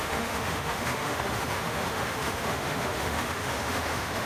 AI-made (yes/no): yes